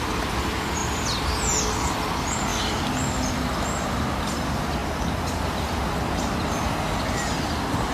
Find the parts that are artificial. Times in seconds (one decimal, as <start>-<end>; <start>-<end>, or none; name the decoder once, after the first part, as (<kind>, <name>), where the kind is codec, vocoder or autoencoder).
none